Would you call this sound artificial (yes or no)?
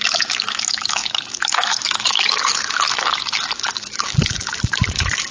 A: yes